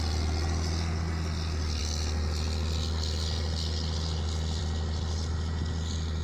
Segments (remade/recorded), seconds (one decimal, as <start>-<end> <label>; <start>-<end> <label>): 0.0-6.2 recorded

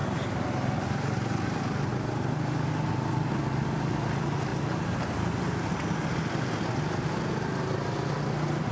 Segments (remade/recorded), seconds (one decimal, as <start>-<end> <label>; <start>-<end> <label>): 0.0-8.7 recorded

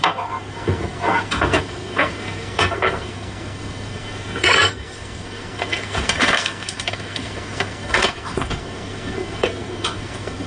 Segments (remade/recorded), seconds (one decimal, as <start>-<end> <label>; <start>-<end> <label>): 0.0-10.5 remade

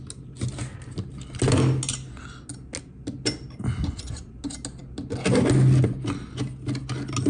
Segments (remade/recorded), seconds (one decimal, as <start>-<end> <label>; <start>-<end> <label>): 0.0-7.3 recorded